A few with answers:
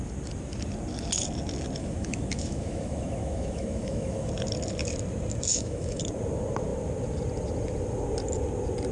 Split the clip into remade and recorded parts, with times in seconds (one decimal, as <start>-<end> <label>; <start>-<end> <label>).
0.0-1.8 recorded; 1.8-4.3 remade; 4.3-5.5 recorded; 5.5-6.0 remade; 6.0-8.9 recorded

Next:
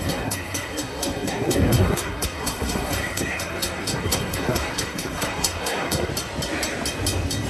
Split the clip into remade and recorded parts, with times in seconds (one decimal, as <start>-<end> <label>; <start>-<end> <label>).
0.0-6.1 remade; 6.1-7.5 recorded

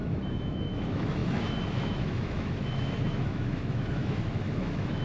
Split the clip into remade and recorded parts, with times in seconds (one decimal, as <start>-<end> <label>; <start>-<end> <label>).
0.0-5.0 remade